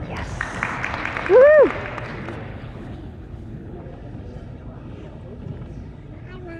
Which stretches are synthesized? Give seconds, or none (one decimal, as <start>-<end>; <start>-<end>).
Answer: 2.5-3.8